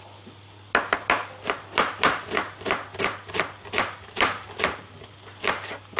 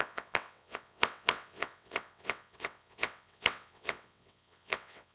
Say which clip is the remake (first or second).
second